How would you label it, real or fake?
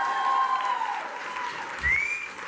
real